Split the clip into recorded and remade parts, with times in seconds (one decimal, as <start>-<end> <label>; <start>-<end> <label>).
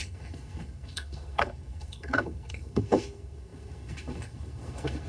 0.0-5.1 remade